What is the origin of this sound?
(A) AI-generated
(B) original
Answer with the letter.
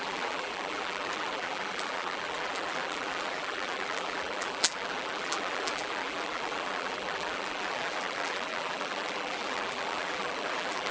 A